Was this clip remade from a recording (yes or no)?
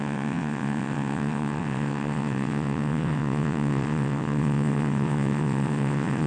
yes